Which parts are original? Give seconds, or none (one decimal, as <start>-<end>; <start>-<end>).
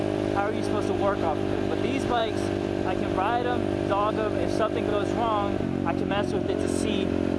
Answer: 0.0-7.4